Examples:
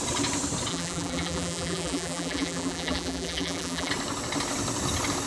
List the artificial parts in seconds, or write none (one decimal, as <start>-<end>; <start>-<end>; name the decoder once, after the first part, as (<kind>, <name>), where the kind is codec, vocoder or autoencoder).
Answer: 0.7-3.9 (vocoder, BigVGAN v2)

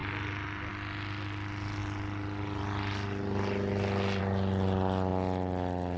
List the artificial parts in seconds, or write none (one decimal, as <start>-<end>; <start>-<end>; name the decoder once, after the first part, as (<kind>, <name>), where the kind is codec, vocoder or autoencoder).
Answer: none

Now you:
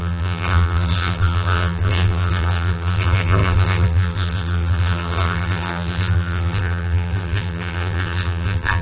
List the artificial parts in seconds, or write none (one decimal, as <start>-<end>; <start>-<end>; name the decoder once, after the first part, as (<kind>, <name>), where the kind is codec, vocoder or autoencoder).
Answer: 0.0-8.8 (vocoder, BigVGAN v2)